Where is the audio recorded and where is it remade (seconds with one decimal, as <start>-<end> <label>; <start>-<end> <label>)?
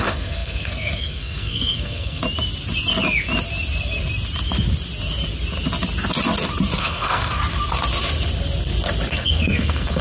0.0-2.2 remade; 2.2-6.8 recorded; 6.8-7.4 remade; 7.4-9.1 recorded; 9.1-10.0 remade